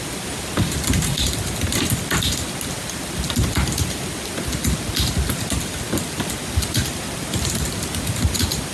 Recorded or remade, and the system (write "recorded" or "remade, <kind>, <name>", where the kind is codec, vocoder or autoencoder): recorded